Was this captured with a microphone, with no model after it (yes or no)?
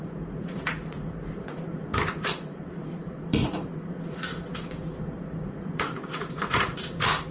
no